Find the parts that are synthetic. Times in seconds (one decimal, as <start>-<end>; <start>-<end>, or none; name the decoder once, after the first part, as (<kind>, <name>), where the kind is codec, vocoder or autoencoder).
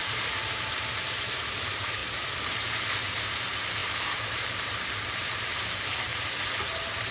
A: 0.0-2.0 (vocoder, BigVGAN v2); 2.9-6.1; 6.6-7.1